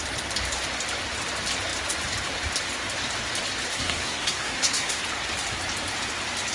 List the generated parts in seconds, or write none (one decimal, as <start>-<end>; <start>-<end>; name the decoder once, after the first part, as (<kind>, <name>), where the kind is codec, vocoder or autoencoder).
3.7-5.0 (codec, SNAC)